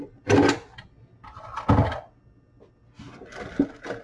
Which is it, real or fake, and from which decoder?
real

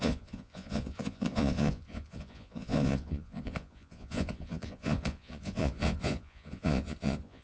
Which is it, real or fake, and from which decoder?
fake, vocoder, Vocos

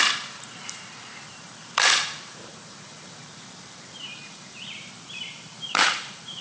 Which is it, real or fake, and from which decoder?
fake, vocoder, BigVGAN v2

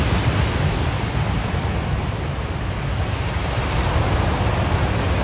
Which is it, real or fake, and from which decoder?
real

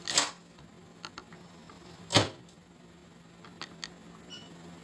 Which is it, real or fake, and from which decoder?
real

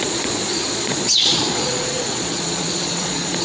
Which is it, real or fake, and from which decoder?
fake, vocoder, Vocos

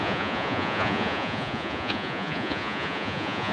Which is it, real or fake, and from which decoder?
fake, vocoder, Vocos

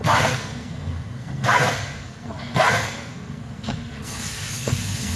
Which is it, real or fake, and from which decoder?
fake, codec, SNAC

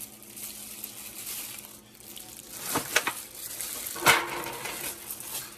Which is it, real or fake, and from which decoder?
real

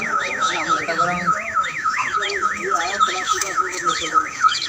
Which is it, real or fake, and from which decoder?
fake, autoencoder, DAC-VAE